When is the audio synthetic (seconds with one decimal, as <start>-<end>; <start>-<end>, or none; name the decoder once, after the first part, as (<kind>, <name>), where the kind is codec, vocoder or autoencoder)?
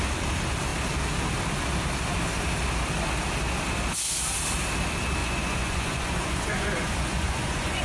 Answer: 5.2-7.8 (vocoder, Vocos)